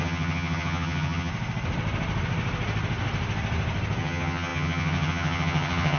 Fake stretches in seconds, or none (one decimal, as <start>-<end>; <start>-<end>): 0.0-1.3; 4.0-6.0